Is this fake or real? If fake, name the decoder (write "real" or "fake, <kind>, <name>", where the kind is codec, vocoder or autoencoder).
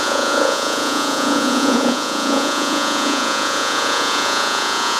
fake, vocoder, Vocos